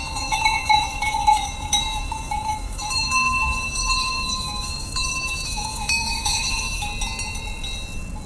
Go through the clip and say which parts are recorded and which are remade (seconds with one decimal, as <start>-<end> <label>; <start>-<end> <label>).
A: 0.0-6.9 remade; 6.9-8.3 recorded